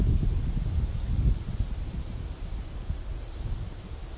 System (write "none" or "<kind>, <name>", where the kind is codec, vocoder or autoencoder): none